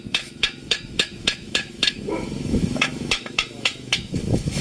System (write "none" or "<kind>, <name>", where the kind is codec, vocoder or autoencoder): autoencoder, DAC-VAE